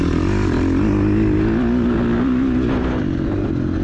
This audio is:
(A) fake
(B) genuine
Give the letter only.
B